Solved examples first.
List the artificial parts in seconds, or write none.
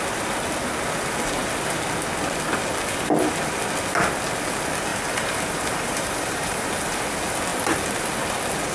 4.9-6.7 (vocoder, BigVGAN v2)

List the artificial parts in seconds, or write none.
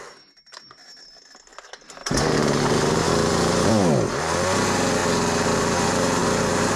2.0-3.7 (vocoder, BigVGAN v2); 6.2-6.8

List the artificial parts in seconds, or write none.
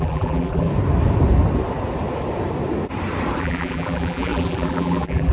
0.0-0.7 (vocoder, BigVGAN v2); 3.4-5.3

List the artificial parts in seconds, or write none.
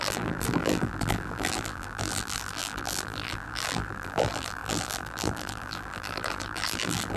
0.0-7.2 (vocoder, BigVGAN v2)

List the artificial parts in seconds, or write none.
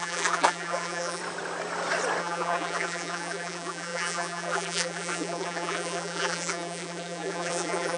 0.0-1.2 (vocoder, BigVGAN v2); 2.2-8.0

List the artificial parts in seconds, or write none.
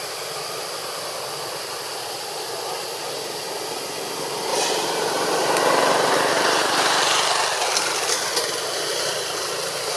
4.5-7.0 (vocoder, BigVGAN v2)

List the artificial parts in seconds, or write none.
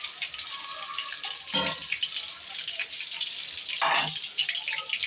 2.6-3.8 (vocoder, BigVGAN v2)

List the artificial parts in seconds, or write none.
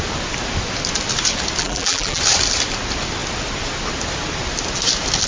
1.6-2.2 (vocoder, BigVGAN v2)